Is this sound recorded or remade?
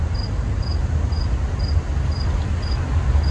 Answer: recorded